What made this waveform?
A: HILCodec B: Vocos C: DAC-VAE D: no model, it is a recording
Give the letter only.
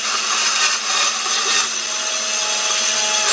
D